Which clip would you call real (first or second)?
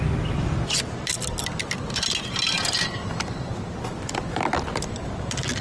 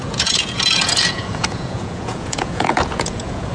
first